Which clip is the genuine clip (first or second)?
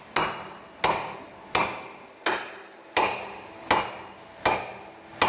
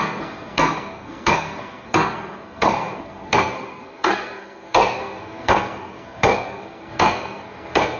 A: first